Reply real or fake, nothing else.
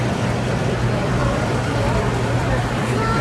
fake